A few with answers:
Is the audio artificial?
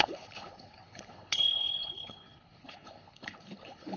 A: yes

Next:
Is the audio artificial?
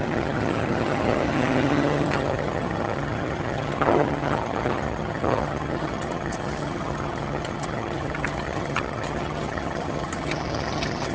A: yes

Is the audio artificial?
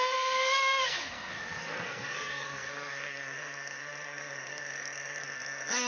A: yes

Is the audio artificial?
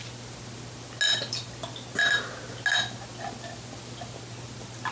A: no